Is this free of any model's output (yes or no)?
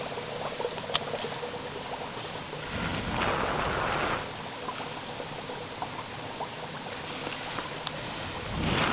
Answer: yes